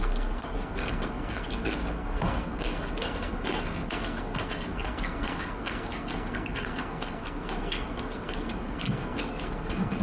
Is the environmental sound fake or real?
fake